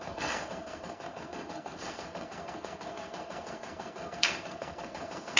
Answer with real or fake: fake